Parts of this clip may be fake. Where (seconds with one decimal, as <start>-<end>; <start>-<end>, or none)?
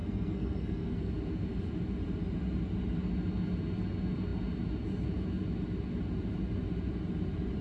0.0-1.1